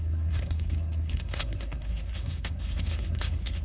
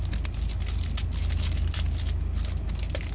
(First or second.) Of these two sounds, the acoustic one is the second